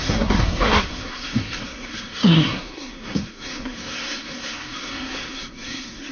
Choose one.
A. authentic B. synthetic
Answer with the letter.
B